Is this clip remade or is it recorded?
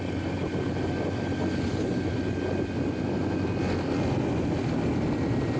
recorded